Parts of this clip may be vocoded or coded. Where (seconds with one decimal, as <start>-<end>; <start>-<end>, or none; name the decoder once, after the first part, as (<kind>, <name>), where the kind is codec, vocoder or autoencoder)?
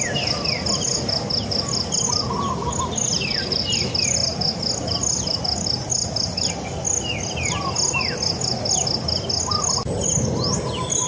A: none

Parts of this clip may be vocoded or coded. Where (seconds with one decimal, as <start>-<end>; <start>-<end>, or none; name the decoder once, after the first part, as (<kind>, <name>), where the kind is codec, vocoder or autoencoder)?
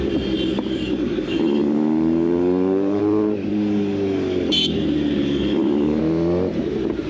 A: 0.5-3.0 (codec, DAC); 3.5-6.0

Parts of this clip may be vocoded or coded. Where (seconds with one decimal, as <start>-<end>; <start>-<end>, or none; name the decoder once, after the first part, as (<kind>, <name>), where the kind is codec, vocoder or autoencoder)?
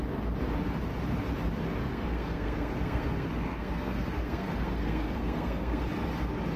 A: 1.8-5.8 (codec, SNAC)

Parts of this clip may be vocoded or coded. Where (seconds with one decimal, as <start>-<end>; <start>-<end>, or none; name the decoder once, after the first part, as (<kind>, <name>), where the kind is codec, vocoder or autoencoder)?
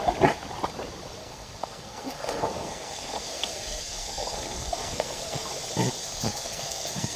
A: 1.2-5.5 (codec, SNAC); 6.0-7.2